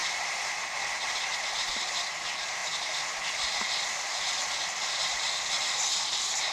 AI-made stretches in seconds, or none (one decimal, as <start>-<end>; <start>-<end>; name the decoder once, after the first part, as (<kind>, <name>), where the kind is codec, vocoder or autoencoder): none